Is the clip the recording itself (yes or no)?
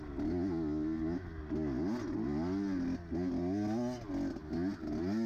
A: yes